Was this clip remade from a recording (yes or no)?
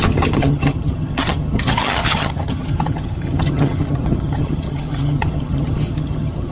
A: yes